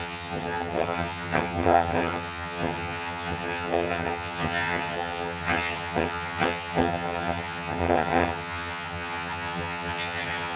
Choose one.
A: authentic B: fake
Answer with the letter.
B